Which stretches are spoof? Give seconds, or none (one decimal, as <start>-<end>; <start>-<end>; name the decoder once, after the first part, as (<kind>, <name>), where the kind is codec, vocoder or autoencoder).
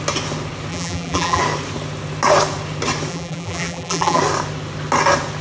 0.7-1.4 (vocoder, BigVGAN v2); 3.1-4.2